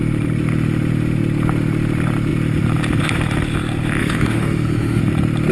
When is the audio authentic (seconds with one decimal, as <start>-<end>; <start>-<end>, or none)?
0.0-4.0; 5.0-5.5